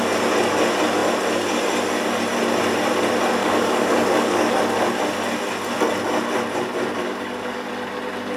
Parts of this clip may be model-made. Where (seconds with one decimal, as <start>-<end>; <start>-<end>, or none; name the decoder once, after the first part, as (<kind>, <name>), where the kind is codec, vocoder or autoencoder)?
3.4-4.6 (codec, DAC); 7.0-7.7